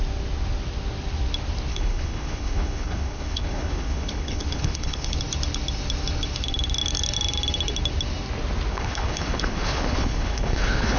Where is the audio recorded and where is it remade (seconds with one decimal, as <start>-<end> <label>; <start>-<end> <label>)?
0.0-1.7 recorded; 1.7-5.2 remade; 5.2-8.7 recorded; 8.7-11.0 remade

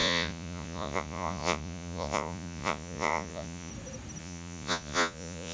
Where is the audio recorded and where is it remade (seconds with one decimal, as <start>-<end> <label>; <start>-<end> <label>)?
0.0-3.7 remade; 3.7-4.2 recorded; 4.2-5.5 remade

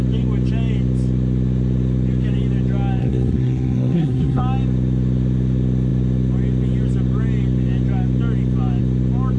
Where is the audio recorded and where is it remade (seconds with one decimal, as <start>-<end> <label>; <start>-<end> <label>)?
0.0-3.0 recorded; 3.0-4.4 remade; 4.4-9.4 recorded

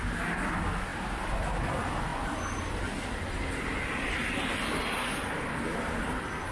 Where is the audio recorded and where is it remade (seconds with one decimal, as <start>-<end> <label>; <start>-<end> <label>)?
0.0-6.5 recorded